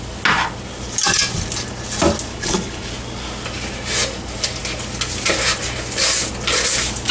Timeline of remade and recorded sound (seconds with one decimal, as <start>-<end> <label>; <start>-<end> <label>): 0.0-2.3 recorded; 2.3-2.9 remade; 2.9-7.1 recorded